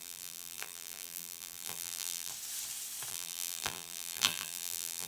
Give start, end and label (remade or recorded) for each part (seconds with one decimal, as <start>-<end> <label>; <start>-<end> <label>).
0.0-2.3 remade; 2.3-3.1 recorded; 3.1-5.1 remade